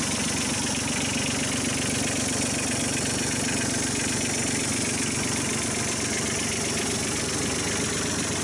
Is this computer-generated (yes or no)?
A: no